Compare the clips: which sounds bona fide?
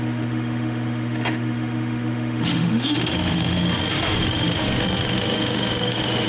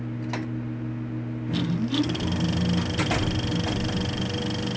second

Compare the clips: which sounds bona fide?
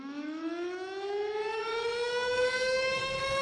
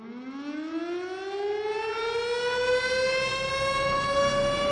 second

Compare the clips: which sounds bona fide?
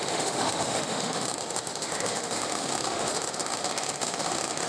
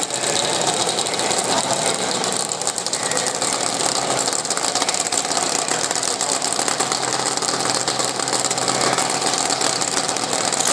second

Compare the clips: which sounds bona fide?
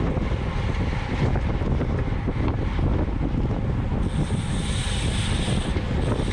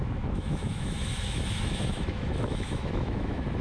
first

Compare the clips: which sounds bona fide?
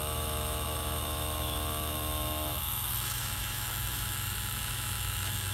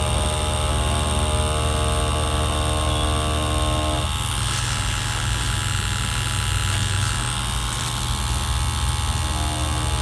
second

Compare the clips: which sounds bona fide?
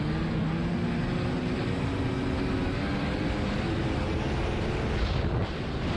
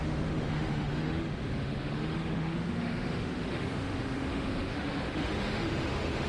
first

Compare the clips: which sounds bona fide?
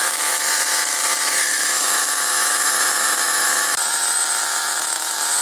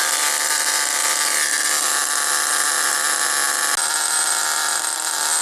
second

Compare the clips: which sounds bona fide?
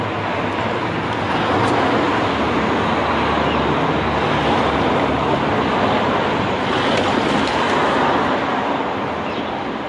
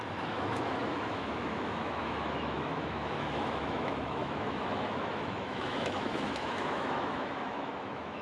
first